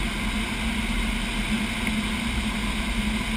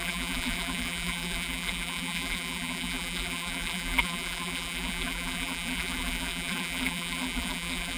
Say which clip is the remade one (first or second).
second